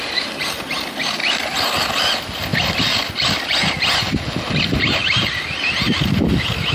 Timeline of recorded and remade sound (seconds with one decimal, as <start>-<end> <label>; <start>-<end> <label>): 0.0-5.0 recorded; 5.0-5.6 remade; 5.6-6.7 recorded